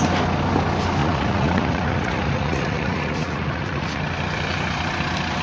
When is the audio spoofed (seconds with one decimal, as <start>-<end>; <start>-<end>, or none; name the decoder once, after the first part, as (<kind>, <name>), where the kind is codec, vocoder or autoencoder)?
1.0-4.0 (vocoder, Vocos)